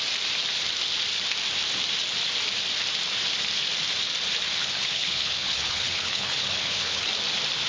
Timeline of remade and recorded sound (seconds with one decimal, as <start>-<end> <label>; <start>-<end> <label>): 0.0-4.6 recorded; 4.6-7.1 remade; 7.1-7.7 recorded